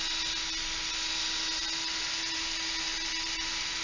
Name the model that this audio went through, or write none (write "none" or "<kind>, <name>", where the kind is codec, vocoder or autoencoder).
none